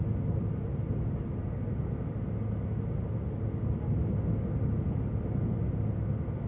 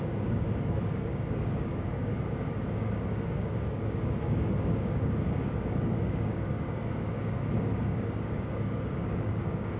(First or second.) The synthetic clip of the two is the second